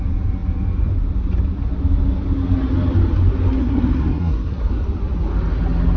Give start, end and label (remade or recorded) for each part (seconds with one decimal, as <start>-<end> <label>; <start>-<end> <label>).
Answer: 0.0-3.6 recorded; 3.6-4.7 remade; 4.7-6.0 recorded